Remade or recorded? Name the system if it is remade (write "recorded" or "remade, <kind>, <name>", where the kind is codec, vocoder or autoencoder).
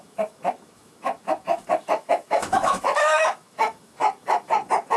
remade, autoencoder, DAC-VAE